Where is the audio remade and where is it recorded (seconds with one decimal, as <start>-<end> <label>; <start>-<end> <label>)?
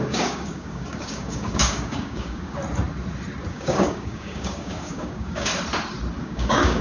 0.0-2.6 remade; 2.6-3.5 recorded; 3.5-5.5 remade; 5.5-6.2 recorded; 6.2-6.8 remade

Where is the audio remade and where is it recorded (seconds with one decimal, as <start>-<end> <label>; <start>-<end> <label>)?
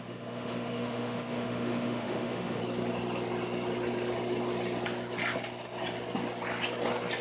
0.0-2.6 remade; 2.6-7.2 recorded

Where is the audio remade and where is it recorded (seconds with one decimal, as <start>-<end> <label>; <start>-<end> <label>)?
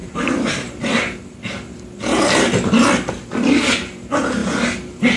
0.0-5.2 recorded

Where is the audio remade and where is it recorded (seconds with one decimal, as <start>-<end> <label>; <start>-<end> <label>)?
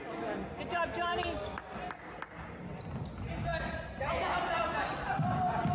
0.0-5.7 recorded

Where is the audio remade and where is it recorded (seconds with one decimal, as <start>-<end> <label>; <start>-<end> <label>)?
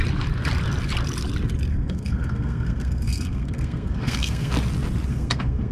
0.0-1.7 recorded; 1.7-4.5 remade; 4.5-5.1 recorded; 5.1-5.7 remade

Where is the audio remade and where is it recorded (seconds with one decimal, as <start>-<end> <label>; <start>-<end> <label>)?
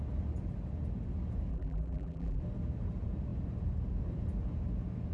0.0-1.5 recorded; 1.5-2.4 remade; 2.4-5.1 recorded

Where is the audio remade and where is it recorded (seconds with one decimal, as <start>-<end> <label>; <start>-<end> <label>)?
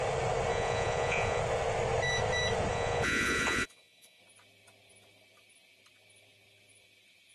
0.0-0.5 recorded; 0.5-1.4 remade; 1.4-2.7 recorded; 2.7-4.2 remade; 4.2-7.3 recorded